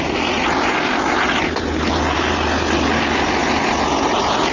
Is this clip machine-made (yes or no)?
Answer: no